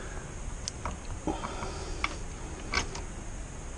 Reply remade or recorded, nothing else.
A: recorded